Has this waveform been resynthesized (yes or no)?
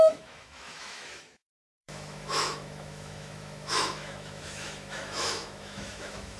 yes